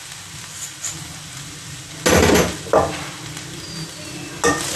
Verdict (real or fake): real